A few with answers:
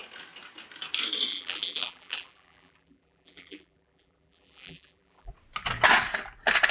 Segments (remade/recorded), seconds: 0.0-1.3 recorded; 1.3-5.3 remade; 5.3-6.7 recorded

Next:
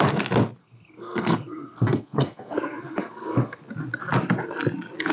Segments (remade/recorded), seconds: 0.0-0.6 recorded; 0.6-3.6 remade; 3.6-5.1 recorded